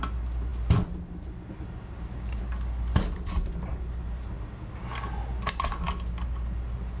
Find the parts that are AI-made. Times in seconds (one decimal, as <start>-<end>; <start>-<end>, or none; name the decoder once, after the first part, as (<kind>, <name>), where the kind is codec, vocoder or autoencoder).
none